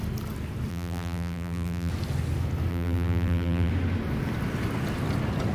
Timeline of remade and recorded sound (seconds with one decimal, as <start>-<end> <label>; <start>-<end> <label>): 0.0-0.7 recorded; 0.7-1.9 remade; 1.9-2.7 recorded; 2.7-3.7 remade; 3.7-5.5 recorded